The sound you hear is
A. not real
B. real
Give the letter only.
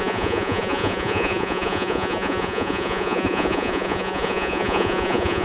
A